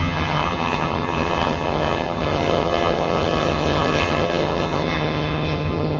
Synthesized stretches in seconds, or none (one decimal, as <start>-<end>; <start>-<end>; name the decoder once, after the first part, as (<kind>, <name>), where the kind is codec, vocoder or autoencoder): 0.0-6.0 (vocoder, HiFi-GAN)